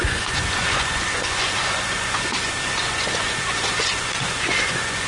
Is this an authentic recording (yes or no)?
no